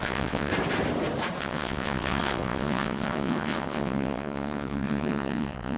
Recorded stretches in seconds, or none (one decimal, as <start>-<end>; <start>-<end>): 0.5-1.4